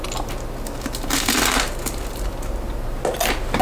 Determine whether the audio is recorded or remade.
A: recorded